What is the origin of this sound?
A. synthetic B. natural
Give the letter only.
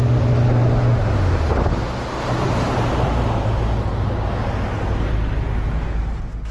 B